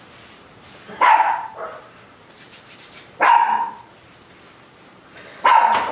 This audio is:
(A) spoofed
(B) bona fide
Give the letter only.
A